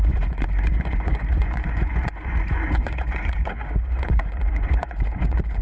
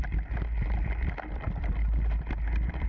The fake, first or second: first